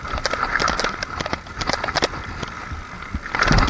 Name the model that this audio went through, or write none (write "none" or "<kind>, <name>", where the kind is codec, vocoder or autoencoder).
none